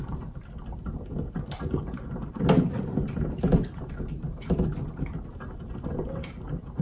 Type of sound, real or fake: real